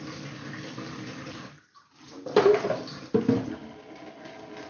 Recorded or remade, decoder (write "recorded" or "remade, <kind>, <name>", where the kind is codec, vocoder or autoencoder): recorded